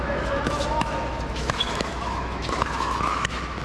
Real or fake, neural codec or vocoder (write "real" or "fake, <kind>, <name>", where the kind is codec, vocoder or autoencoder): fake, autoencoder, DAC-VAE